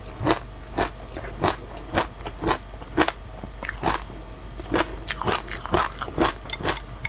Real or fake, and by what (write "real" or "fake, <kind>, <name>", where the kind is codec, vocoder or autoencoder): real